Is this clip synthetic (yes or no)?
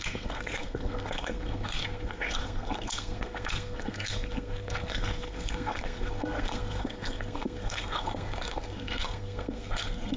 yes